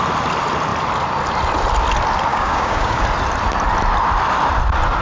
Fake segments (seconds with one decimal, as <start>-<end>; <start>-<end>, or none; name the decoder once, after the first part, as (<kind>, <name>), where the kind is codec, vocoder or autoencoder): 2.3-3.0 (codec, DAC)

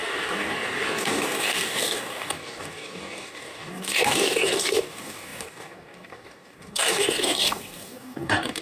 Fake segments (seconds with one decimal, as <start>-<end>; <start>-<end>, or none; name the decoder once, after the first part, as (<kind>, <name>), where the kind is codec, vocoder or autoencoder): 0.0-8.6 (codec, DAC)